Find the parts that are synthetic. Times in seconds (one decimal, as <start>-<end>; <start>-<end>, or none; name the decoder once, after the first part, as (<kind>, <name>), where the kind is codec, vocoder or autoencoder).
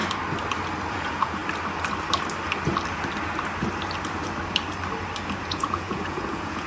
0.9-1.4 (vocoder, Vocos); 5.4-6.7